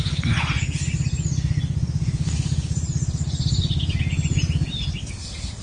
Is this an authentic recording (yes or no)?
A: yes